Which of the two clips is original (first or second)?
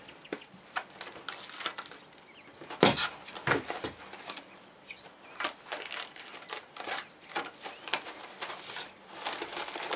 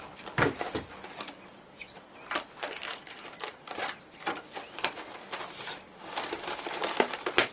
first